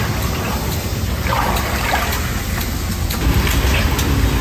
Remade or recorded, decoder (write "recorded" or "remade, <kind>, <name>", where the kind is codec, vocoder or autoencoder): recorded